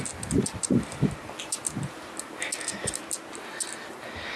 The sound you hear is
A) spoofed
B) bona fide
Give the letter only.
B